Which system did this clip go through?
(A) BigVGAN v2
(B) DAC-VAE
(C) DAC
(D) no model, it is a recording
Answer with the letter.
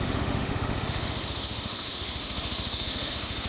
B